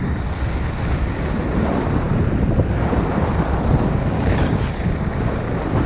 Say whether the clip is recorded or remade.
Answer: recorded